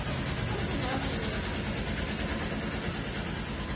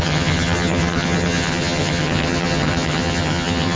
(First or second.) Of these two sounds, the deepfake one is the second